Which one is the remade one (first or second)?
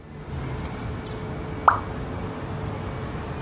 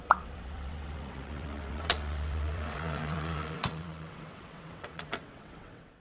second